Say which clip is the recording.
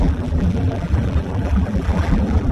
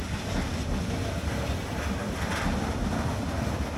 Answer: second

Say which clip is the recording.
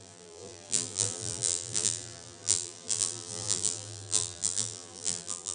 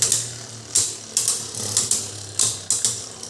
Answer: second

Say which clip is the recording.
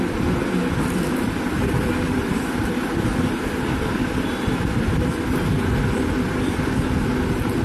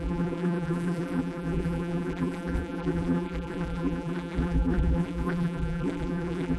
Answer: first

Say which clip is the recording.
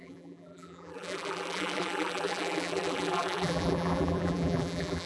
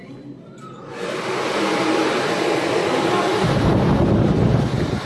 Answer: second